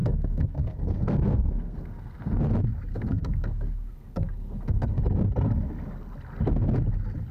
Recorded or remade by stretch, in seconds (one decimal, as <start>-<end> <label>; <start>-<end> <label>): 0.0-2.4 remade; 2.4-2.9 recorded; 2.9-5.0 remade; 5.0-7.3 recorded